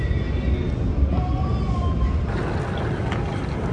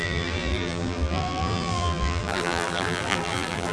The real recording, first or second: first